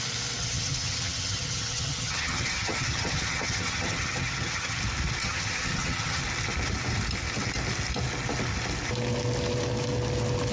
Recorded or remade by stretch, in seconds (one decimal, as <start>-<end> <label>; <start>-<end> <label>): 0.0-0.4 recorded; 0.4-4.8 remade; 4.8-5.2 recorded; 5.2-6.2 remade; 6.2-10.5 recorded